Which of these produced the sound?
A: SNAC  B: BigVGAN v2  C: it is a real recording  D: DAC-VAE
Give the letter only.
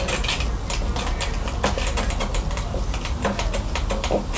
C